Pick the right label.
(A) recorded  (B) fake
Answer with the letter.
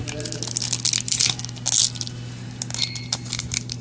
A